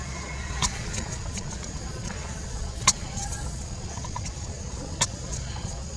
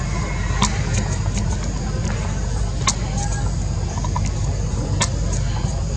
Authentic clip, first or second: second